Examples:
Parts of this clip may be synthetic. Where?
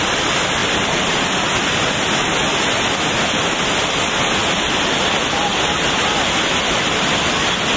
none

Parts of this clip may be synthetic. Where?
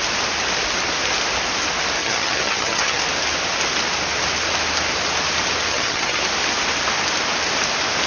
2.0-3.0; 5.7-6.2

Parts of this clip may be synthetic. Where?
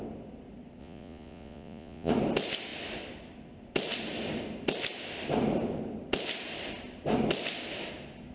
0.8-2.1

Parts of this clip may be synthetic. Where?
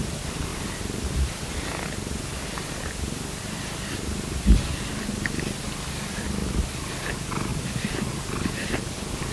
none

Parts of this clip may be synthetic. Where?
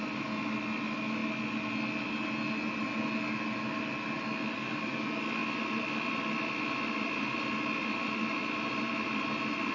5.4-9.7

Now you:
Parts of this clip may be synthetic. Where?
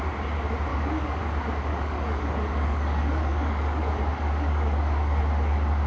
0.7-1.2; 1.7-5.2